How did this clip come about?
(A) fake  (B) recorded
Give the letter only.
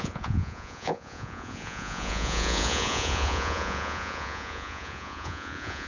A